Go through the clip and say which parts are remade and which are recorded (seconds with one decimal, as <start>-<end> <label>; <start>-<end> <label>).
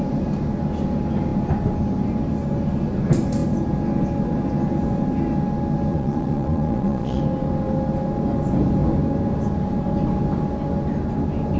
0.0-5.9 recorded; 5.9-7.2 remade; 7.2-11.6 recorded